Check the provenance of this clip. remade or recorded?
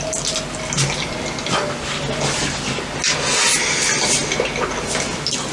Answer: recorded